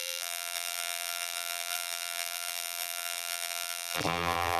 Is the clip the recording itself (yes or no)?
no